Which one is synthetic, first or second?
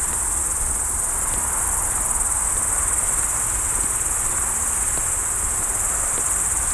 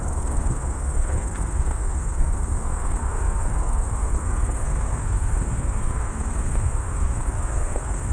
second